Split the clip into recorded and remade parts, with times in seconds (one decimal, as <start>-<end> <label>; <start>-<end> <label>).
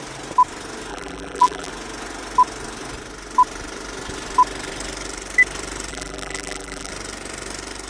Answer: 0.0-0.9 recorded; 0.9-1.7 remade; 1.7-5.9 recorded; 5.9-6.9 remade; 6.9-7.9 recorded